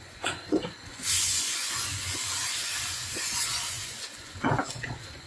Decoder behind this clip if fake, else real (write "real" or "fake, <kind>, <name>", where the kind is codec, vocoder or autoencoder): fake, vocoder, Vocos